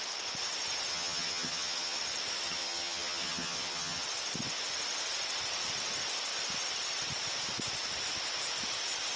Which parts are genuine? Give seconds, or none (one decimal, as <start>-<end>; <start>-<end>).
0.0-0.9; 2.0-2.4; 4.0-9.2